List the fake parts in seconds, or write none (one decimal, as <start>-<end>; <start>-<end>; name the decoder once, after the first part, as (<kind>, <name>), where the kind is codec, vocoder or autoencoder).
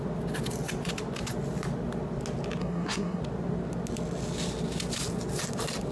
2.6-3.2 (codec, SNAC)